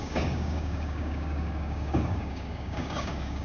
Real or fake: fake